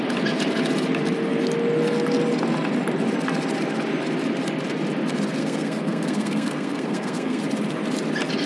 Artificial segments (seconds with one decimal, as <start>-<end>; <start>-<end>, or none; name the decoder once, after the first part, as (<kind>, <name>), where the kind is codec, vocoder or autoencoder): 5.4-7.4 (codec, SNAC)